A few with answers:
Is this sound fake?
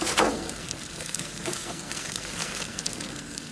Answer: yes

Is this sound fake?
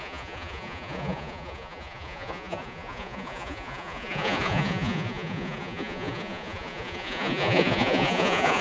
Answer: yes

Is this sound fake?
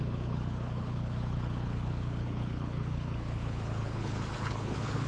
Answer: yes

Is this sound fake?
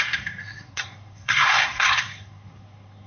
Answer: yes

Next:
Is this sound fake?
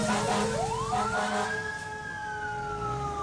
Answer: no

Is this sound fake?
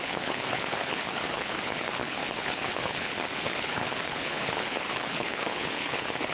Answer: yes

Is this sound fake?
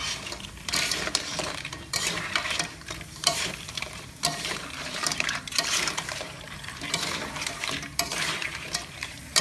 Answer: yes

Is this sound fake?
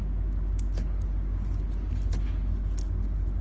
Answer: no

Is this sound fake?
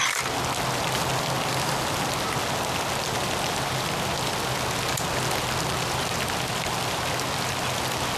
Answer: no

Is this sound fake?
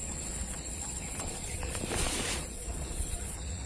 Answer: yes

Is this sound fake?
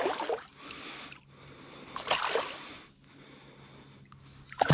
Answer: no